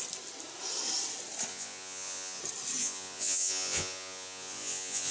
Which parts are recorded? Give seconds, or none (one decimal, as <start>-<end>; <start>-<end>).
0.0-1.5; 2.4-2.8